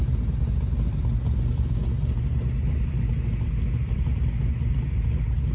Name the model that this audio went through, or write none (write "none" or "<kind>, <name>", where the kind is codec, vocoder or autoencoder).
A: none